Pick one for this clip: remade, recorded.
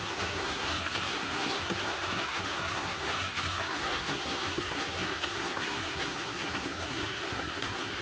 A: remade